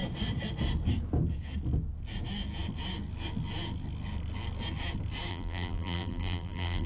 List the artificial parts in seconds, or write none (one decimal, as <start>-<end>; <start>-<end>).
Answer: 5.3-6.9